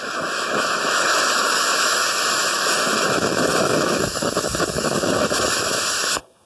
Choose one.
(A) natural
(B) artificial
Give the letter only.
B